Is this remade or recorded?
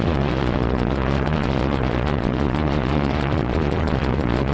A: remade